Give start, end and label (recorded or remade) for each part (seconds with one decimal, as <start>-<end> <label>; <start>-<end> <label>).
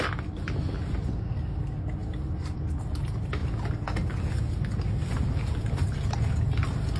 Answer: 0.0-7.0 recorded